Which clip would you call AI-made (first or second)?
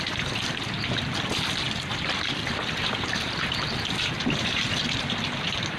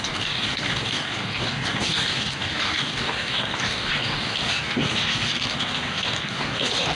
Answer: second